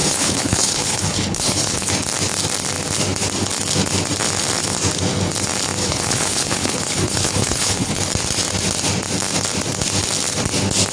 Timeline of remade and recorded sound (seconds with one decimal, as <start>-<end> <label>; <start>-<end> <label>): 0.0-1.9 remade; 1.9-5.8 recorded; 5.8-8.0 remade; 8.0-10.9 recorded